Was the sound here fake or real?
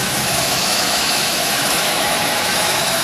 fake